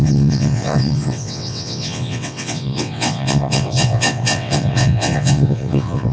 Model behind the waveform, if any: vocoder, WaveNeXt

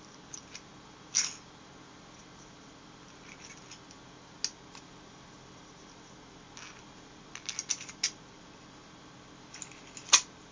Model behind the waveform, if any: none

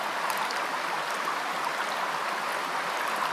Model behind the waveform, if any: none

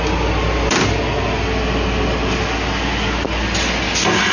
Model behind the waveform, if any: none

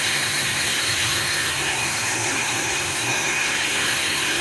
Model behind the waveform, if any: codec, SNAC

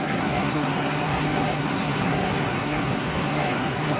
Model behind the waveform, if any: codec, SNAC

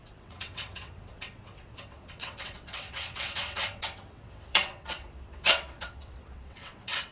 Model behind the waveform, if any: vocoder, WaveNeXt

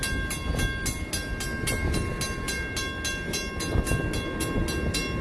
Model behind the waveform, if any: none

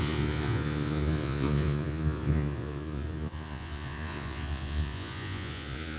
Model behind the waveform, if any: vocoder, Vocos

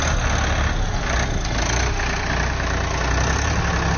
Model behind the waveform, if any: none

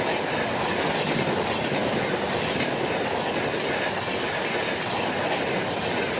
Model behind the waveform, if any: none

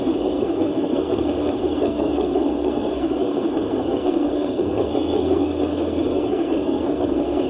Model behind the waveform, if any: codec, SNAC